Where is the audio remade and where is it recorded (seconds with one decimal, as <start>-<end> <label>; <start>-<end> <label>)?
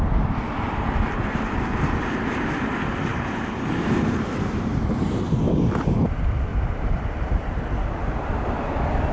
0.0-3.1 recorded; 3.1-5.3 remade; 5.3-6.5 recorded; 6.5-8.5 remade; 8.5-9.1 recorded